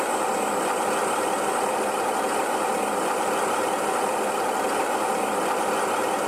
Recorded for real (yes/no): yes